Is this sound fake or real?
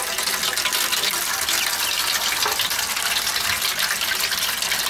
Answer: real